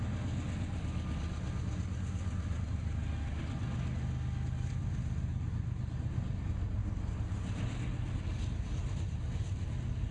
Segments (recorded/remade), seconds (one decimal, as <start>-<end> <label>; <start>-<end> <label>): 0.0-10.1 recorded